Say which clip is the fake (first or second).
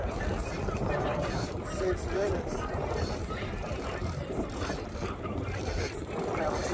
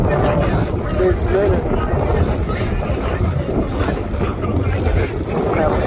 first